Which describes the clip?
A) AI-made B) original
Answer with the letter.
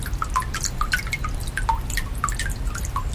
B